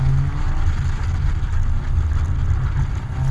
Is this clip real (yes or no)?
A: yes